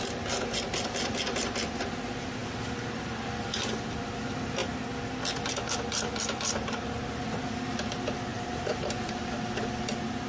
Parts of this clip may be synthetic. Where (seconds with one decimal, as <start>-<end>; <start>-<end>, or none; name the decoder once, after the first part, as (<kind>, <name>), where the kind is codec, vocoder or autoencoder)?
8.3-9.3 (vocoder, BigVGAN v2)